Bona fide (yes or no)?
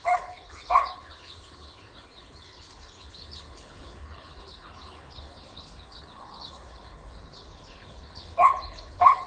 no